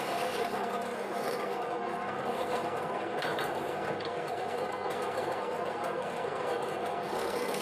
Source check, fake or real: fake